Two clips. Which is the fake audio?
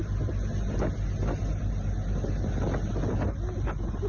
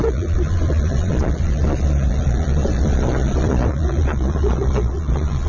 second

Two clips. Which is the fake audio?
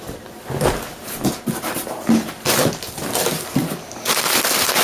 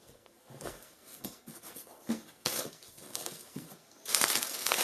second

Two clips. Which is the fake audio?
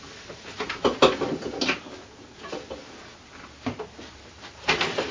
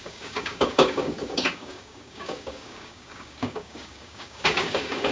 second